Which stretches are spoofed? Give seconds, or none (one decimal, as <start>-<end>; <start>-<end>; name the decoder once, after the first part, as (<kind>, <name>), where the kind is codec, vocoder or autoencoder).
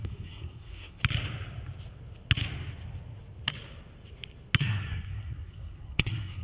0.0-1.0 (codec, SNAC); 4.6-6.4